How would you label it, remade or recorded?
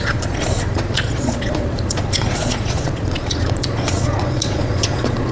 remade